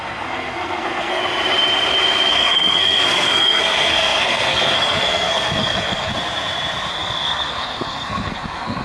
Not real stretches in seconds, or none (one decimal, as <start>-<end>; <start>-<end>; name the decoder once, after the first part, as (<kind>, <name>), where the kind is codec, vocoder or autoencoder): 0.0-1.2 (codec, SNAC); 2.3-6.1; 6.9-8.8